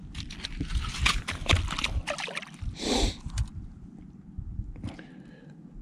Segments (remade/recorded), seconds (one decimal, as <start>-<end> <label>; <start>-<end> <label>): 0.0-5.8 recorded